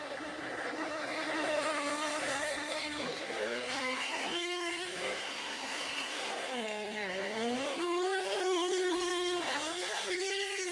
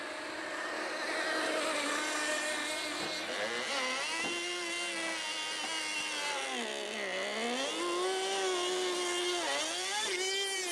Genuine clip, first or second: second